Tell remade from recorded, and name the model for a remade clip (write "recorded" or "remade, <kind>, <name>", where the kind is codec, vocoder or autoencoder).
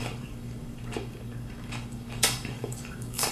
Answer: remade, codec, DAC